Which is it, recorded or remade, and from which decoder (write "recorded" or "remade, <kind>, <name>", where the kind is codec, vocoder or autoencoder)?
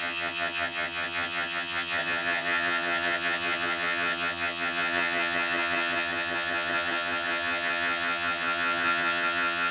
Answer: remade, vocoder, HiFi-GAN